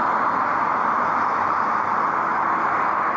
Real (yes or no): no